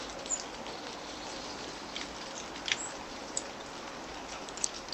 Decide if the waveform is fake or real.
real